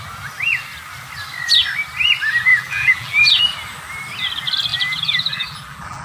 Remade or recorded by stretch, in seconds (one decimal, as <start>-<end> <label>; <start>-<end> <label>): 0.0-2.5 recorded; 2.5-3.4 remade; 3.4-4.7 recorded; 4.7-6.0 remade